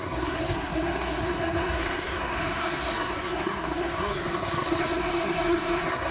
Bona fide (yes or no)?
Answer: no